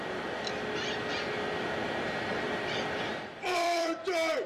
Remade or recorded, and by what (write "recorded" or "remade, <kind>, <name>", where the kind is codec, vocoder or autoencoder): remade, vocoder, BigVGAN v2